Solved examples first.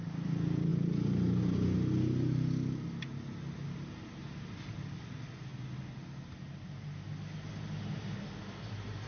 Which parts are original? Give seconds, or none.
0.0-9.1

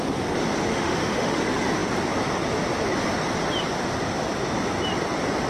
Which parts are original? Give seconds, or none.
0.0-0.7; 1.4-5.5

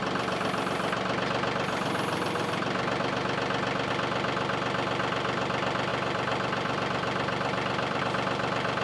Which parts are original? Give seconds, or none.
0.0-5.9; 8.0-8.8